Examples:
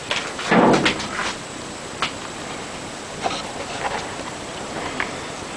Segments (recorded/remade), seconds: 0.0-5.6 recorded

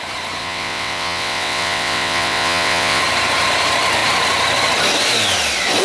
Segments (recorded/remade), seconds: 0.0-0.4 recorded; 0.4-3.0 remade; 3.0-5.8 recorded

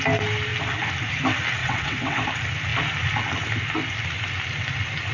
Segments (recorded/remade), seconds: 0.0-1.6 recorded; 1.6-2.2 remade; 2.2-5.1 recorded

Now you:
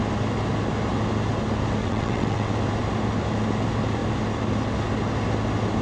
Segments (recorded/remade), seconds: 0.0-1.8 recorded; 1.8-2.5 remade; 2.5-5.8 recorded

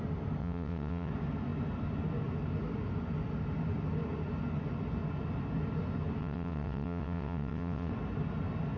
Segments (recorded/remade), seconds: 0.0-0.4 recorded; 0.4-1.1 remade; 1.1-6.2 recorded; 6.2-7.9 remade; 7.9-8.8 recorded

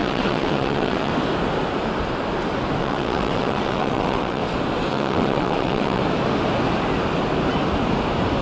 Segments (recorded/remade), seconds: 0.0-1.1 remade; 1.1-2.8 recorded; 2.8-4.4 remade; 4.4-4.9 recorded; 4.9-6.0 remade; 6.0-8.4 recorded